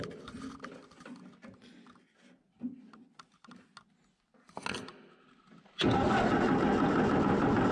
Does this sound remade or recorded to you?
recorded